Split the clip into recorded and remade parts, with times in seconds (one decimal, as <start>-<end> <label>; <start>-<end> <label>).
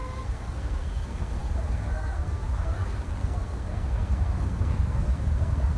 0.0-5.8 remade